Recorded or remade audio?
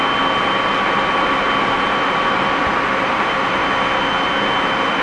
recorded